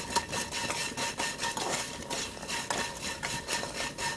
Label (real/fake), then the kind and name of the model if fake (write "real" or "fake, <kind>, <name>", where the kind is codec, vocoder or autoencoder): real